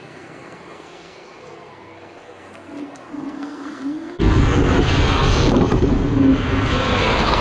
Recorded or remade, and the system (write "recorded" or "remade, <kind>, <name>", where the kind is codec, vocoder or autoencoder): remade, codec, SNAC